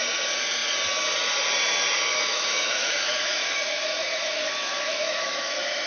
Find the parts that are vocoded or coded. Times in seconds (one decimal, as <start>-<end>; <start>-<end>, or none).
2.1-5.9